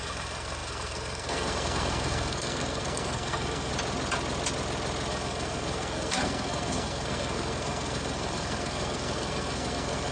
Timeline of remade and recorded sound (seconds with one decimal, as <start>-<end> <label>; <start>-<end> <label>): 0.0-3.7 remade; 3.7-5.1 recorded; 5.1-10.1 remade